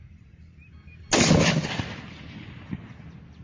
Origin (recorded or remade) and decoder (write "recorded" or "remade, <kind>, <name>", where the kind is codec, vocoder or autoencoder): recorded